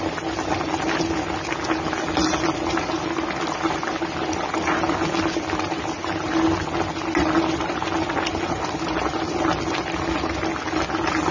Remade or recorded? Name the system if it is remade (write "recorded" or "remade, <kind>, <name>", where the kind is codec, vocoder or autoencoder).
recorded